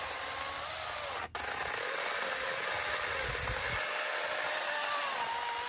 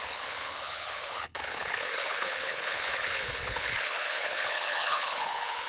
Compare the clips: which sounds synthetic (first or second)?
second